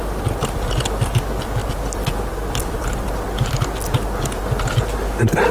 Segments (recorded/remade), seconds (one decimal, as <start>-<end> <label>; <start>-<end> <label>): 0.0-1.6 recorded; 1.6-3.1 remade; 3.1-5.5 recorded